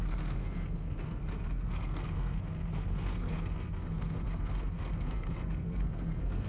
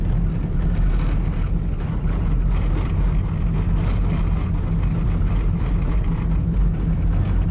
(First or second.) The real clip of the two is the second